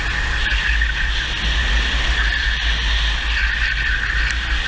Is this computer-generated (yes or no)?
no